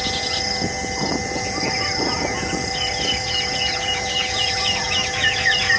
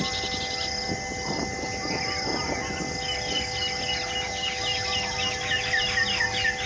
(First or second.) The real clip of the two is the second